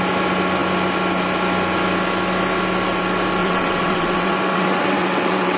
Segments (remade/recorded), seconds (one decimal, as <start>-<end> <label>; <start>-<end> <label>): 0.0-3.4 recorded; 3.4-5.6 remade